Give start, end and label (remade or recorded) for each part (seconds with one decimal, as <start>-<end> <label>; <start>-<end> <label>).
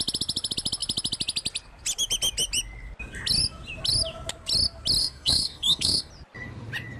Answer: 0.0-5.0 recorded; 5.0-6.1 remade; 6.1-7.0 recorded